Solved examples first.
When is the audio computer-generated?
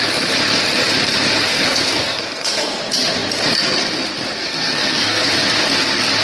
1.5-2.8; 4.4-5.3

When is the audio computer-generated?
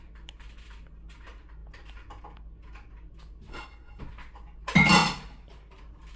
3.5-4.0